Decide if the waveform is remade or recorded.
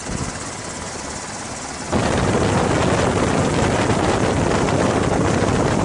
recorded